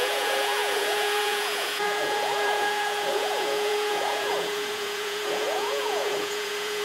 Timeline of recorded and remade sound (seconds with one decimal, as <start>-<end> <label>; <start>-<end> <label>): 0.0-6.8 remade